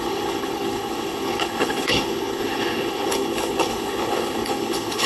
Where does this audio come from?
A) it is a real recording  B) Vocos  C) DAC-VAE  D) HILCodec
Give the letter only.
D